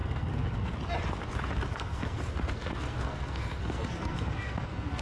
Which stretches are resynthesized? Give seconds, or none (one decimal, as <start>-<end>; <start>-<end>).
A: 0.0-0.7; 1.7-5.0